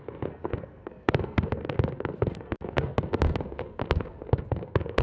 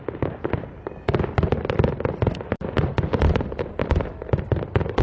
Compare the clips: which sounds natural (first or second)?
second